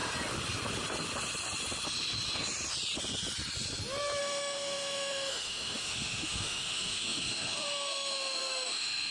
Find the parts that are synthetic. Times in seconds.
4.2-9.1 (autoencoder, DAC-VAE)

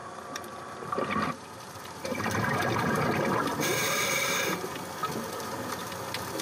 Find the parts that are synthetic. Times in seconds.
0.0-3.0 (vocoder, BigVGAN v2); 3.8-4.5

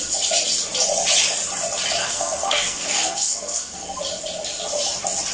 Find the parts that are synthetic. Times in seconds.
2.0-4.0 (codec, SNAC)

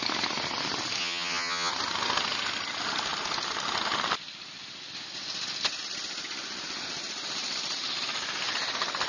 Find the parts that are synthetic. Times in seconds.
1.0-1.7 (vocoder, HiFi-GAN)

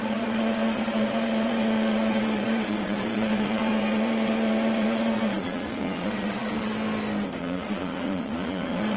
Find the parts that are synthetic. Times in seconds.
0.0-6.7 (vocoder, Vocos); 7.4-9.0

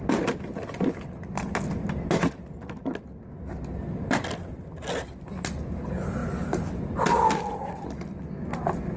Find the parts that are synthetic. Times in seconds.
none

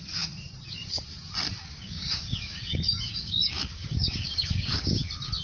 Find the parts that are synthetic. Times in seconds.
1.7-4.9 (codec, DAC)

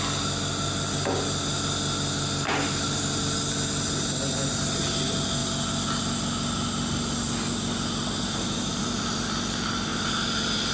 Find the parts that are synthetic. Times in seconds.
9.9-10.7 (vocoder, BigVGAN v2)